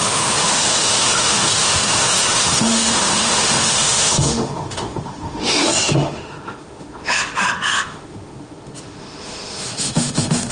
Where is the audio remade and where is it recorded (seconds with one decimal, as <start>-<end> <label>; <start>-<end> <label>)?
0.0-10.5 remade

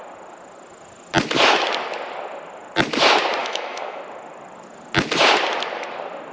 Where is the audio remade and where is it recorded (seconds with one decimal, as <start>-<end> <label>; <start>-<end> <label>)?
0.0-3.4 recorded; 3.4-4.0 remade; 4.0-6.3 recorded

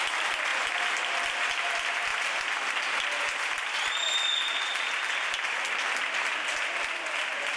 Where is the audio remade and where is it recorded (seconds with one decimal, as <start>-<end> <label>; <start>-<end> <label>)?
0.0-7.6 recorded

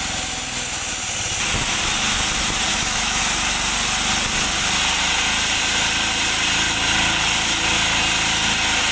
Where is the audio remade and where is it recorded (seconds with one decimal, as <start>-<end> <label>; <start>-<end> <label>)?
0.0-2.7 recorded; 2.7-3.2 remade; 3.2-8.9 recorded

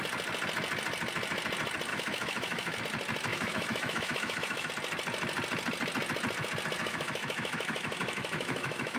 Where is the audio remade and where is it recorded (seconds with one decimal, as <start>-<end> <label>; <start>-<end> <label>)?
0.0-1.9 recorded; 1.9-2.8 remade; 2.8-3.3 recorded; 3.3-4.7 remade; 4.7-6.8 recorded; 6.8-9.0 remade

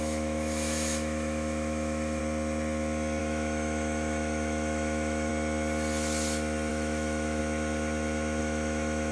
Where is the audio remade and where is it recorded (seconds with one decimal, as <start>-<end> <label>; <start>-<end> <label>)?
0.0-2.2 remade; 2.2-3.2 recorded; 3.2-5.3 remade; 5.3-6.7 recorded; 6.7-7.4 remade; 7.4-8.4 recorded; 8.4-9.1 remade